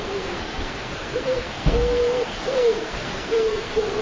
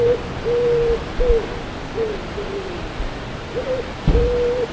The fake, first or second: first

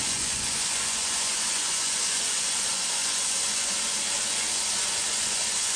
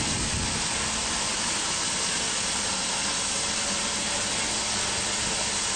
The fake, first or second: first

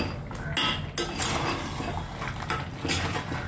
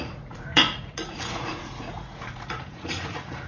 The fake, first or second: second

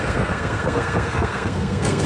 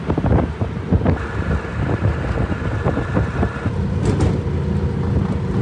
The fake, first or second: first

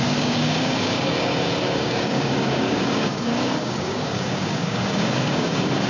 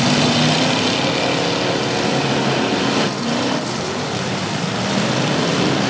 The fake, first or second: first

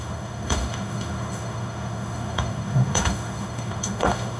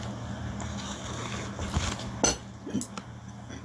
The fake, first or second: first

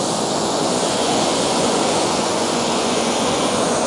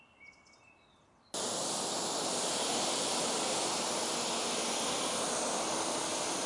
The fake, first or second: first